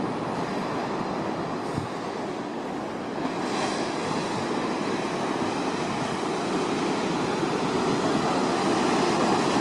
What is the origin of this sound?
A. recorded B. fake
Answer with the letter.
A